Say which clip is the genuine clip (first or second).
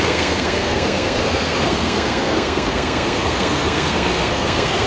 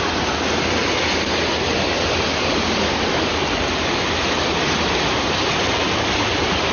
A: second